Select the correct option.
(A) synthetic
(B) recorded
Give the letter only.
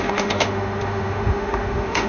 A